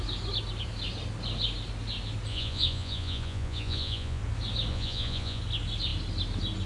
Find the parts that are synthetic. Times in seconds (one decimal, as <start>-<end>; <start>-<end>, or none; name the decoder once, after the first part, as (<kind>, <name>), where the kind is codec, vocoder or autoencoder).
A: 2.3-4.2 (vocoder, Vocos); 4.7-5.4

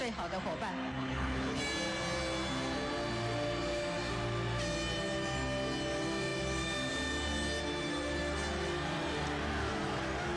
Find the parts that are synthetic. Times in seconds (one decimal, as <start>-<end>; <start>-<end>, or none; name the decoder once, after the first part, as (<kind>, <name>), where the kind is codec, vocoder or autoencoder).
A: 0.9-1.6 (codec, HILCodec)

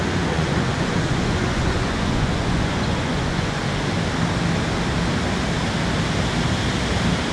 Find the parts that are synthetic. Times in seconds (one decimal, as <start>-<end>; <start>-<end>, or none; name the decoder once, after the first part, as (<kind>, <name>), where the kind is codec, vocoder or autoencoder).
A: 0.0-3.6 (vocoder, Vocos)

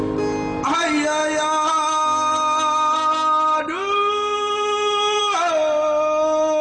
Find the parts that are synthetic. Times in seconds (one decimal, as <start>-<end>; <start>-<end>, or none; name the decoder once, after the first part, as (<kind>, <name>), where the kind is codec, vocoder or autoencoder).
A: none